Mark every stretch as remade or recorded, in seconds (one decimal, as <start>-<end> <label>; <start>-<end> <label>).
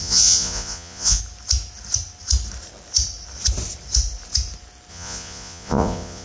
0.0-1.2 remade; 1.2-4.9 recorded; 4.9-6.2 remade